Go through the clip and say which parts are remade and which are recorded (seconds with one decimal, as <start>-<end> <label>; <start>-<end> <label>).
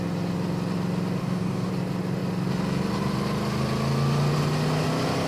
0.0-1.2 recorded; 1.2-1.7 remade; 1.7-5.3 recorded